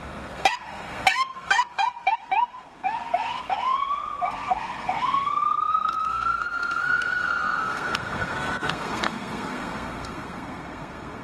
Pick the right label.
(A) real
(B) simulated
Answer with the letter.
B